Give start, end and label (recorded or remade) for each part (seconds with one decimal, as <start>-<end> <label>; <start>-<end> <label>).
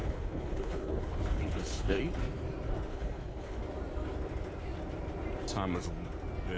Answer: 0.0-2.0 remade; 2.0-2.9 recorded; 2.9-3.6 remade; 3.6-6.6 recorded